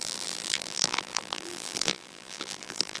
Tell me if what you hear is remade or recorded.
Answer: remade